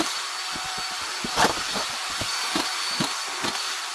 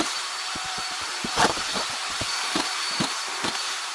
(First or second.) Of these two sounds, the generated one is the second